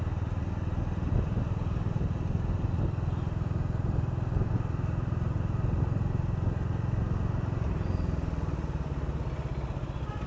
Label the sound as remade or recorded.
recorded